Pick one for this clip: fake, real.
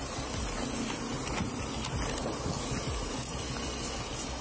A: real